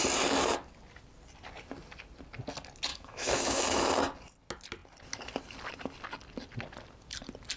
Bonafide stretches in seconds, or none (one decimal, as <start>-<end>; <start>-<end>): 0.0-2.9; 3.9-7.6